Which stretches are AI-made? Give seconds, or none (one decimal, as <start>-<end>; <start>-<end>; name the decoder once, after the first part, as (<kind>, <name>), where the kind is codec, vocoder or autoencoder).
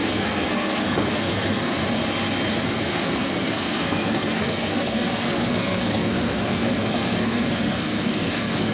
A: 0.0-1.8 (codec, SNAC); 2.7-8.7